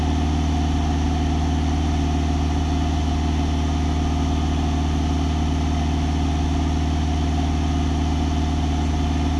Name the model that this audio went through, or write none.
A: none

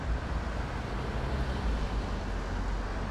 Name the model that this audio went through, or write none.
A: none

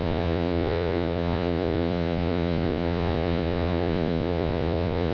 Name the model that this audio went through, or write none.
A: vocoder, Vocos